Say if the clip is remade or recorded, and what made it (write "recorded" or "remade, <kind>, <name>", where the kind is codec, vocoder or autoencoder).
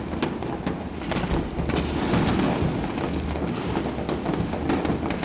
recorded